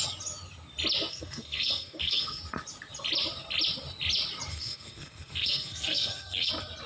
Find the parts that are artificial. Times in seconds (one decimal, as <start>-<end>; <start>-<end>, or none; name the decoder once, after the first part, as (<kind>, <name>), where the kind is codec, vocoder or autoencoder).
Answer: 1.1-2.4 (codec, SNAC); 4.5-6.5